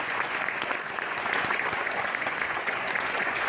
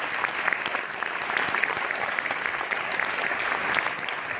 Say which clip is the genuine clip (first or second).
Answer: second